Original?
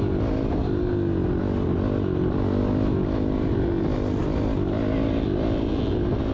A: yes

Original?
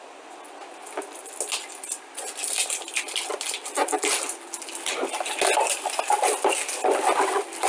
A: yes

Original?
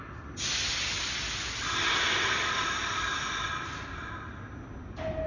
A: yes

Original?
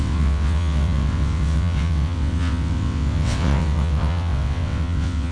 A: no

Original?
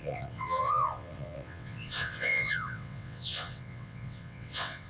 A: no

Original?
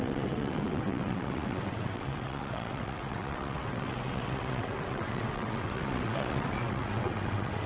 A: no